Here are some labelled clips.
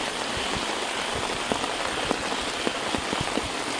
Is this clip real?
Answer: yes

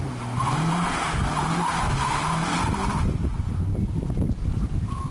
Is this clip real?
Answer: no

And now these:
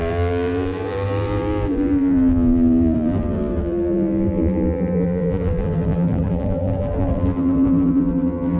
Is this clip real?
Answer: no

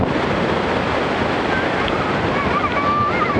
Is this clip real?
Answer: yes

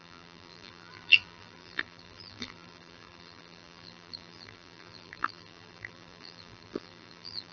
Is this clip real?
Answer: no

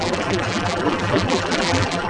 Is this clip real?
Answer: no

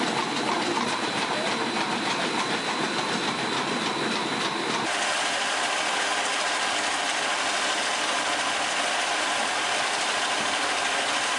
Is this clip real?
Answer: no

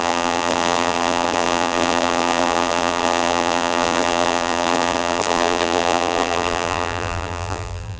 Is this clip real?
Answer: no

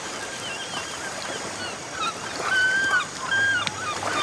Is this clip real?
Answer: yes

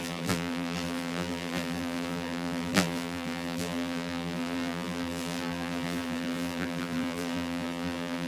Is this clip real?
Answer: no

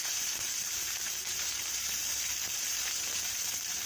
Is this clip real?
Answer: no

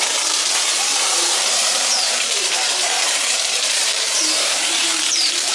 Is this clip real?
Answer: no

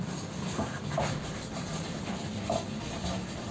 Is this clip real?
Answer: yes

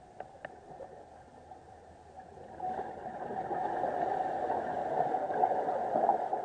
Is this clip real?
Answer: yes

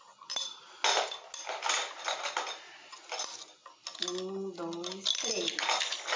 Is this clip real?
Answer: yes